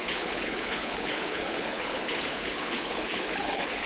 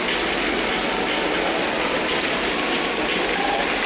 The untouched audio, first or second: second